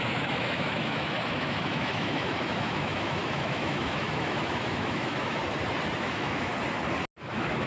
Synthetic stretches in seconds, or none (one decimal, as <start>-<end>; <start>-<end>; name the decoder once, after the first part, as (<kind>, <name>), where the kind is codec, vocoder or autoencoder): 0.0-5.4 (autoencoder, DAC-VAE); 6.0-6.5; 7.3-7.7